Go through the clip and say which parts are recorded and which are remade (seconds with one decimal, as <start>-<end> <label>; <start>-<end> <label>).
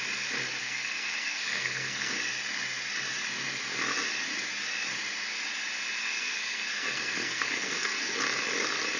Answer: 0.0-0.6 recorded; 0.6-2.1 remade; 2.1-6.0 recorded; 6.0-8.2 remade; 8.2-9.0 recorded